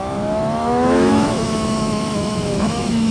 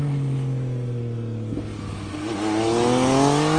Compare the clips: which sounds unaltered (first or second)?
second